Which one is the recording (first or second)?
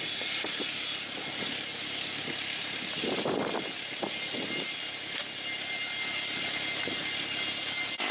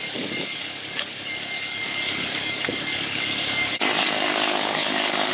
first